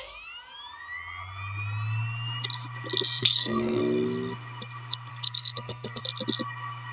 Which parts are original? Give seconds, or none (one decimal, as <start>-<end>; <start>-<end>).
0.0-3.2; 3.8-5.1; 6.0-6.9